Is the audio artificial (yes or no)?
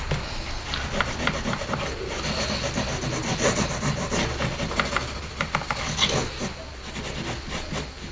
no